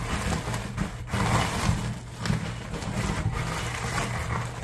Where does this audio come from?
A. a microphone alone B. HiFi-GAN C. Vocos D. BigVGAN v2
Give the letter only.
A